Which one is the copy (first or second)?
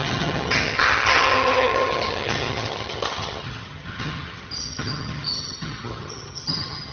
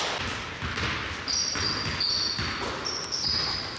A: first